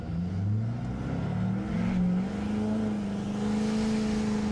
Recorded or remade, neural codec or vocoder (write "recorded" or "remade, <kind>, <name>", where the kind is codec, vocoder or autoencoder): recorded